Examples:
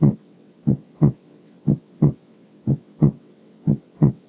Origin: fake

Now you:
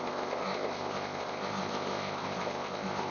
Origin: fake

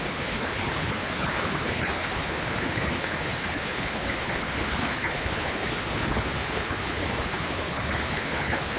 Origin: fake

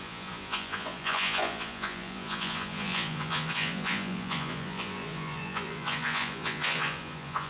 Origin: fake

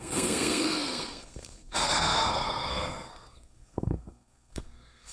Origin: fake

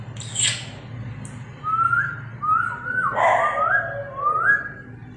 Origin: real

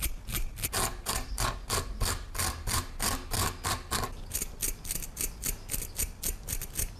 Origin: real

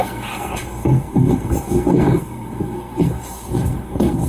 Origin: fake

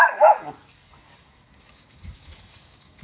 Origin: fake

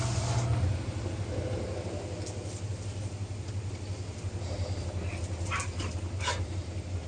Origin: real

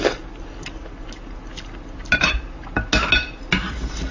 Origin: real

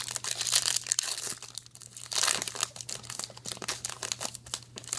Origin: real